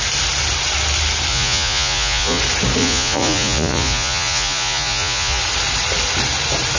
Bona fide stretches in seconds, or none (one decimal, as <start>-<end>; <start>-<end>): 0.0-1.3; 2.4-2.8; 5.4-6.8